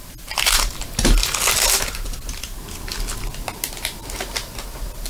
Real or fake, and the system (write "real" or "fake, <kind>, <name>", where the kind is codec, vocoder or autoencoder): real